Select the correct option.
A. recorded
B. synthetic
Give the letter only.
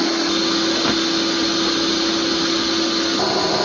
A